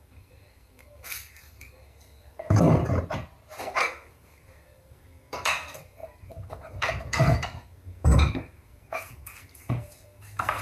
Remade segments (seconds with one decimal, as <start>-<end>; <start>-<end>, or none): 0.0-2.8; 3.6-10.6